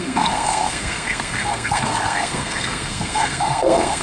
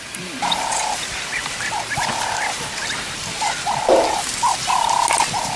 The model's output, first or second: first